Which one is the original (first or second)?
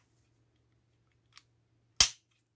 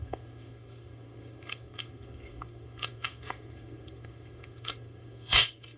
first